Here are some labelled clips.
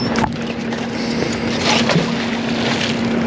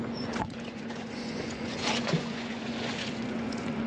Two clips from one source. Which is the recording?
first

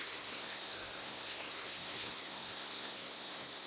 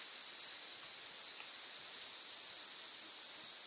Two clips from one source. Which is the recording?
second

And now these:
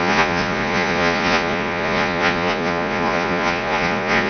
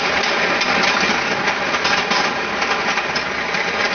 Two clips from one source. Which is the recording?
second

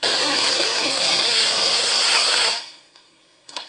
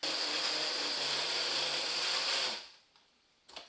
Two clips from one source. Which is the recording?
second